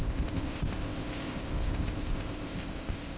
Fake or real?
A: fake